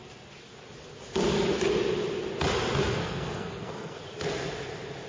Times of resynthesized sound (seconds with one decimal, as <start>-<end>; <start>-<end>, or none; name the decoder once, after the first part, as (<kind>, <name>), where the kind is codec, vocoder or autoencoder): 3.0-4.0 (codec, SNAC)

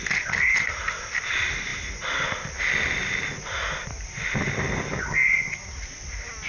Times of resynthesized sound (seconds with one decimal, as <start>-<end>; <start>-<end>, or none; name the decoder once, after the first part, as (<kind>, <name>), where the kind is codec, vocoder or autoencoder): none

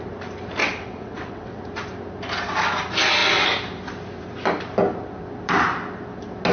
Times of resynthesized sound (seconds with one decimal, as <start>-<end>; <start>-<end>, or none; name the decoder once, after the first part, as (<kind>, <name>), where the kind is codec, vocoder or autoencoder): 0.6-1.6 (vocoder, WaveNeXt)

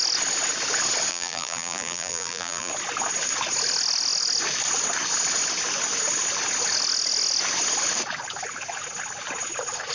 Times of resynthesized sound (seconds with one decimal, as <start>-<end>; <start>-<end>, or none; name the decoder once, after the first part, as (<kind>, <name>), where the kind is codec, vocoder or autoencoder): 1.1-2.7 (vocoder, BigVGAN v2)

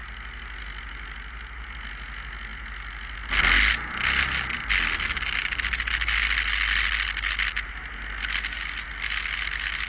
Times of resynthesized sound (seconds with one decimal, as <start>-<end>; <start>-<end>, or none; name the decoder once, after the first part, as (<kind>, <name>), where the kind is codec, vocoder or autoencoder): none

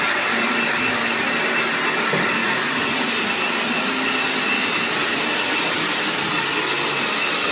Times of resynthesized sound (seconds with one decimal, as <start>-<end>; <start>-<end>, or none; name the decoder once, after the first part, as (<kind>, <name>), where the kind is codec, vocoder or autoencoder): 2.4-3.0 (vocoder, Vocos)

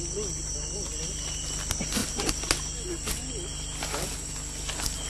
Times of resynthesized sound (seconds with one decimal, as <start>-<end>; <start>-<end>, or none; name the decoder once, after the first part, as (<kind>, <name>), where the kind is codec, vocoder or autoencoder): none

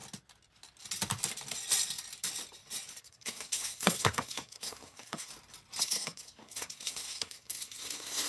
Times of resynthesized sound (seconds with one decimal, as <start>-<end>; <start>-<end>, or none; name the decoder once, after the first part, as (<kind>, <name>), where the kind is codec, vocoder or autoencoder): 3.0-5.3 (codec, SNAC); 5.8-8.3